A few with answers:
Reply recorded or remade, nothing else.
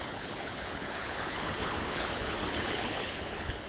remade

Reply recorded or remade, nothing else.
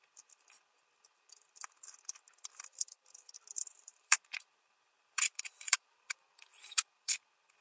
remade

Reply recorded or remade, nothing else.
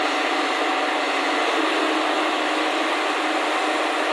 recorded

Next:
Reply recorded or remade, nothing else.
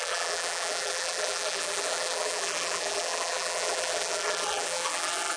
remade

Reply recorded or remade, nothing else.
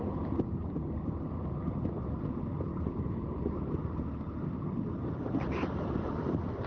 recorded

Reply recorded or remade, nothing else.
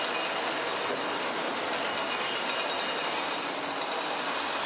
recorded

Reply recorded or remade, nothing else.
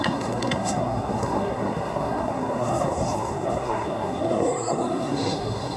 remade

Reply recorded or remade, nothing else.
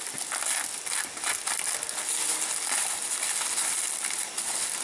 recorded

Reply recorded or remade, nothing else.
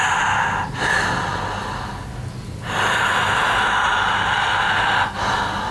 recorded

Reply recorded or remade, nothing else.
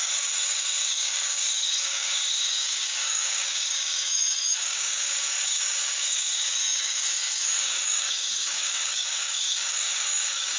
remade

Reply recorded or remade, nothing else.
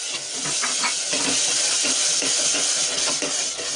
recorded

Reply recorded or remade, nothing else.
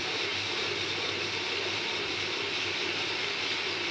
recorded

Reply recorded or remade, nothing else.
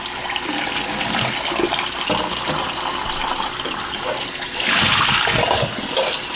recorded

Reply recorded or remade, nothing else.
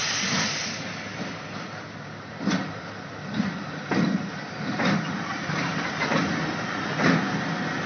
recorded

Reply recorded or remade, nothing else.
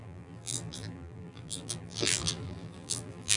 remade